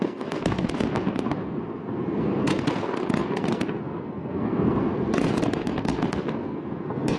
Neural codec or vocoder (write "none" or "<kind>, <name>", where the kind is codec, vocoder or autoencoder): codec, SNAC